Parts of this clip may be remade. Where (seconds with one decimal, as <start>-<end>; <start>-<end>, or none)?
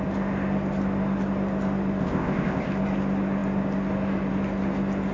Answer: 2.0-2.7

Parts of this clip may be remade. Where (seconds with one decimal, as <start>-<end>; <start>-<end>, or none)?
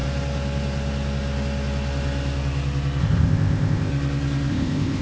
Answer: 3.0-3.9; 4.5-5.0